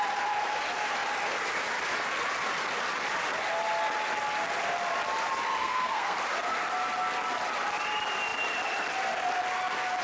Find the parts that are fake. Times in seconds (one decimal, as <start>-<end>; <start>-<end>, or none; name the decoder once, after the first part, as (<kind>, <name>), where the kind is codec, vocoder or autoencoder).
5.6-6.2 (codec, SNAC)